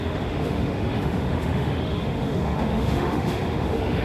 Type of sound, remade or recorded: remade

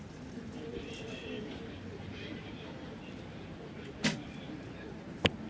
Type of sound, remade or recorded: recorded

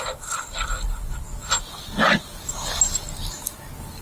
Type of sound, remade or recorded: recorded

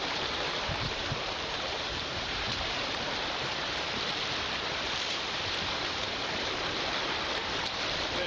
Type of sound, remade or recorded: remade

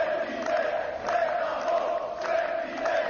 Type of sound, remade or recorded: recorded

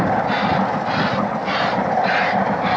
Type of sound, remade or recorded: recorded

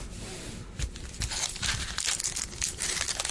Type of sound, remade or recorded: recorded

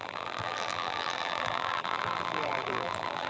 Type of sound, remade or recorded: remade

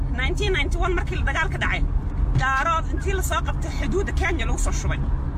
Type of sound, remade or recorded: recorded